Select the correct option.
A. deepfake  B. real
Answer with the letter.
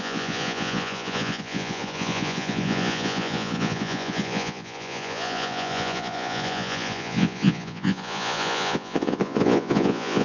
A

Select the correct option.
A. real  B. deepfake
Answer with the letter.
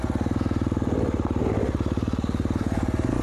A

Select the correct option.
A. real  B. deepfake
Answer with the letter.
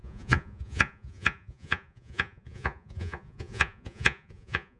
B